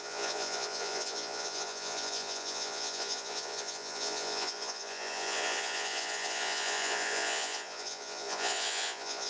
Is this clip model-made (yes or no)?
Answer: yes